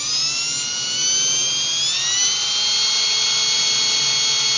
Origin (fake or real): real